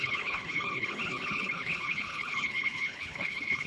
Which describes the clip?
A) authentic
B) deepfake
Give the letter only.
B